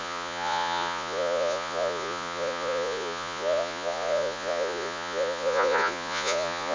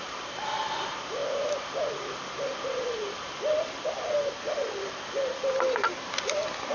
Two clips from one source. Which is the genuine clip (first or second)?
second